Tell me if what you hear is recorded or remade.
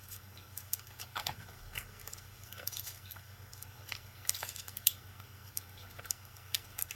remade